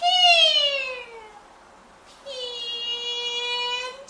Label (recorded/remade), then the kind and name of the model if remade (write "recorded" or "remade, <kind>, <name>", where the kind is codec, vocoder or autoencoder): recorded